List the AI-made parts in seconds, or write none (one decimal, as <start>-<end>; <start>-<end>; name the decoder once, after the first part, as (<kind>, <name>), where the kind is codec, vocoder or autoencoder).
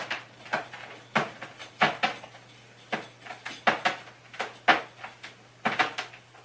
none